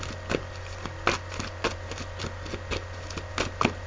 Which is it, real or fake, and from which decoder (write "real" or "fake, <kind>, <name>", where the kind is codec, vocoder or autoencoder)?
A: real